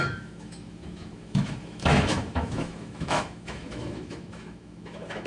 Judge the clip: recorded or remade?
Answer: remade